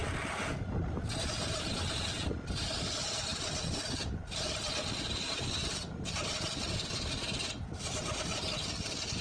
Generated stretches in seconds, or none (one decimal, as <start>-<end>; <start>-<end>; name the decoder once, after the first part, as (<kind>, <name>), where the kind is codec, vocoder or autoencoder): none